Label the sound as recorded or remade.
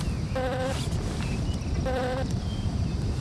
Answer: remade